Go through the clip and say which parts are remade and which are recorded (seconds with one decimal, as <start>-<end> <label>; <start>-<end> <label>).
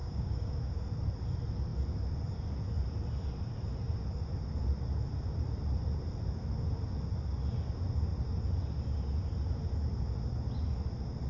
0.0-0.7 remade; 0.7-11.3 recorded